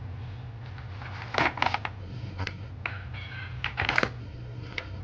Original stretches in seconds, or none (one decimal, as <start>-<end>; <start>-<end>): 0.0-2.0; 2.7-4.2